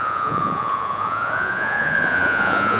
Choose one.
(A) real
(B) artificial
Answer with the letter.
B